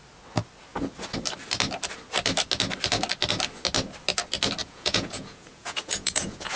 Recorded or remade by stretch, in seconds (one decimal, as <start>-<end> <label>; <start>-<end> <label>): 0.0-4.6 recorded; 4.6-6.6 remade